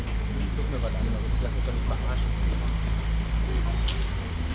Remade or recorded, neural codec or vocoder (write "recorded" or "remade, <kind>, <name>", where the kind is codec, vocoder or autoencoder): recorded